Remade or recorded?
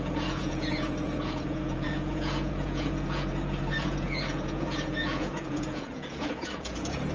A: remade